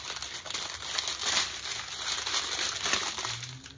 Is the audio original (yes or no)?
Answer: yes